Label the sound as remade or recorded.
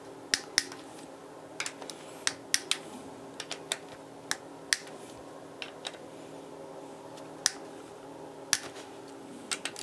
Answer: recorded